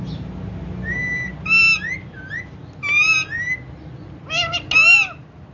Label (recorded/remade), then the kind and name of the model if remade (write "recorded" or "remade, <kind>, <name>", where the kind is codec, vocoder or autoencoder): recorded